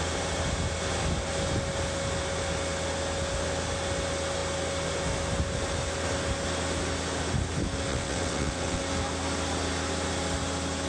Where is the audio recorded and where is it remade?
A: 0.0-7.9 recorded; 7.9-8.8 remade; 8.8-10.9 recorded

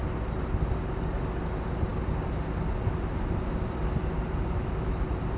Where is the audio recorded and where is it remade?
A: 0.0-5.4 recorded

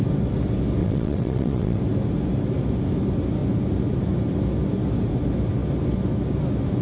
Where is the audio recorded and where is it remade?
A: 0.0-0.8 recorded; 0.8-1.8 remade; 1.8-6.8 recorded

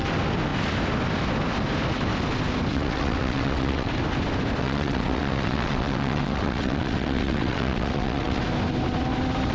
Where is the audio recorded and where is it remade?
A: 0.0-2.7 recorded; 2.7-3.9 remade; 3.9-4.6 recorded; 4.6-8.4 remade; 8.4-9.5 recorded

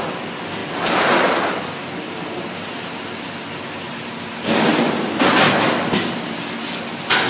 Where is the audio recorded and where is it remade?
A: 0.0-7.3 recorded